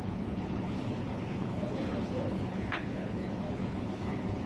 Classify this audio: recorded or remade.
remade